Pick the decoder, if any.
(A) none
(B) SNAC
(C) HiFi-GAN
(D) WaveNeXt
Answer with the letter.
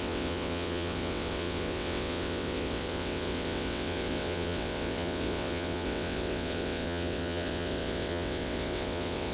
D